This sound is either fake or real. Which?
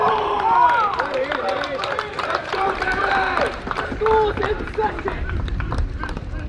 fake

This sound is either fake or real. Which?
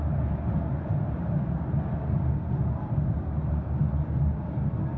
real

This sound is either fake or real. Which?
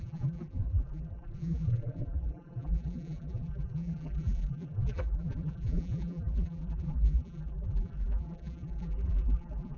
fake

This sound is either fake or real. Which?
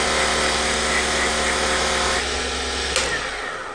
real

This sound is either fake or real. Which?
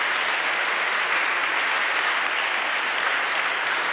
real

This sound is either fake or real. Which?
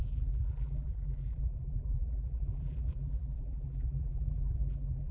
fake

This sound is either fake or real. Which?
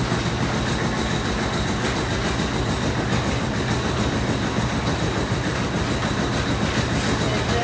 real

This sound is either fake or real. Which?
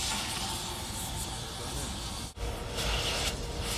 real